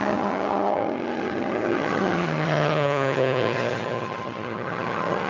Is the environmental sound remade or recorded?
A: remade